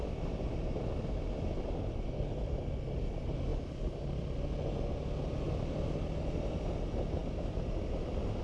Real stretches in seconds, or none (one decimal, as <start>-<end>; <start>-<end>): 0.0-7.2